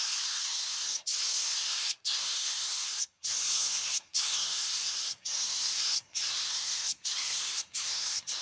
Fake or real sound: fake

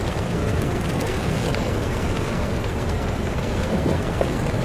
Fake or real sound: fake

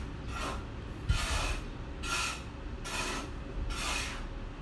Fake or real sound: real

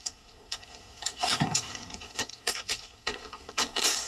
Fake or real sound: fake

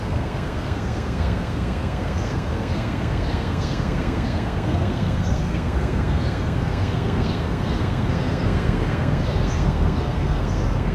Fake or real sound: fake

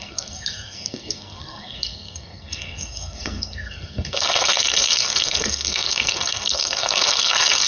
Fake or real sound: fake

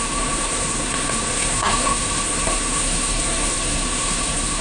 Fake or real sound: fake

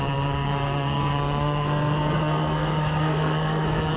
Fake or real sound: fake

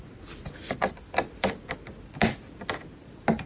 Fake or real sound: real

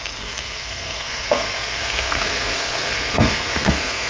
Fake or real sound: fake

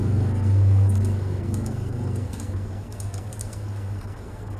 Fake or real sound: fake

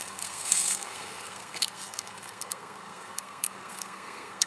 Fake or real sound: fake